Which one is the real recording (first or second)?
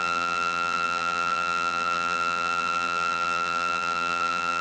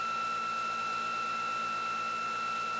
second